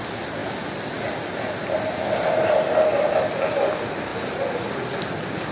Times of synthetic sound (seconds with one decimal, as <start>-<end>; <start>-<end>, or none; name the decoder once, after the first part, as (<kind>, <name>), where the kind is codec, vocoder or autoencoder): none